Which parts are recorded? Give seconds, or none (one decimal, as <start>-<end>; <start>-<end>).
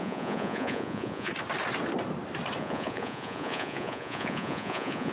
1.3-2.6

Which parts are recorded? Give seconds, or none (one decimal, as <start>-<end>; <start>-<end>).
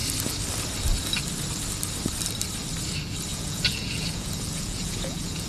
0.0-3.3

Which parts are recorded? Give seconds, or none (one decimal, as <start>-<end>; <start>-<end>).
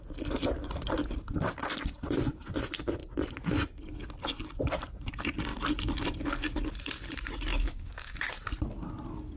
0.0-7.5; 8.3-9.4